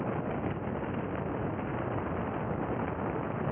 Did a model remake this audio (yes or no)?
no